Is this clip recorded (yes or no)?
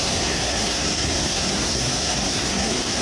no